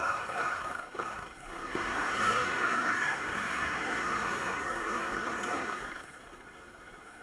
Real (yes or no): no